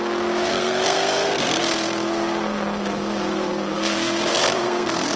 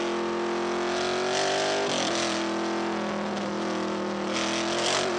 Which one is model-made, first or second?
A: first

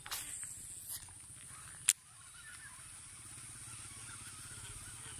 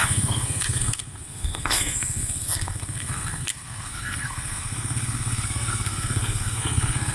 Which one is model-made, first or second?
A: second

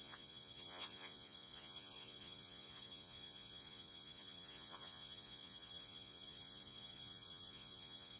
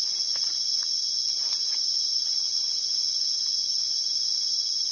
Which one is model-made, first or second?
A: first